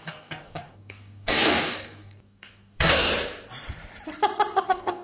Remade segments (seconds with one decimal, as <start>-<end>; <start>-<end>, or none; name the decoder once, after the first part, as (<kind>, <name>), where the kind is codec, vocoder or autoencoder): 0.0-3.1 (codec, DAC); 4.6-5.0